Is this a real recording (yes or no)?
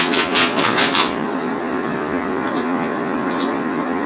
no